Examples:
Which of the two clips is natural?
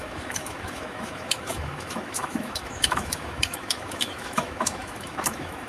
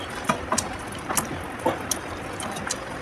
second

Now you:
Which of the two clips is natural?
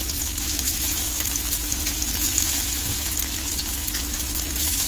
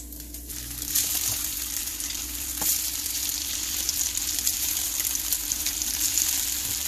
second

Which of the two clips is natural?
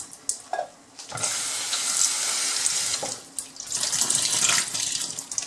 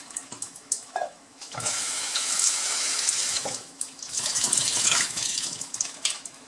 first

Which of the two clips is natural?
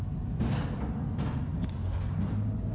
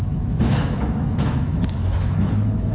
first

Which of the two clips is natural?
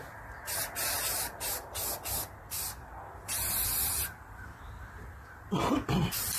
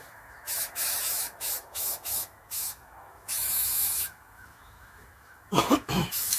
first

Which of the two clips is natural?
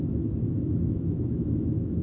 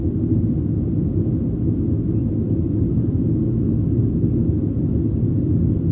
second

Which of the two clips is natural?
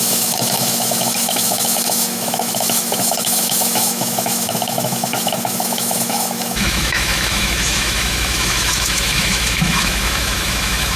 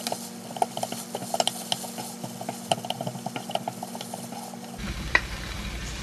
second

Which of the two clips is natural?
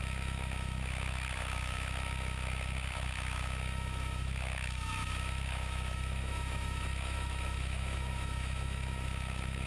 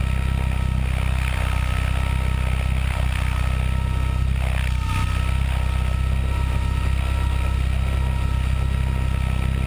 second